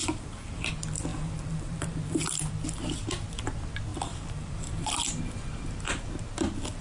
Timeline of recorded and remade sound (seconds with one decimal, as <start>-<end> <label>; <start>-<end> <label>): 0.0-0.7 remade; 0.7-1.1 recorded; 1.1-2.5 remade; 2.5-3.9 recorded; 3.9-5.2 remade; 5.2-6.8 recorded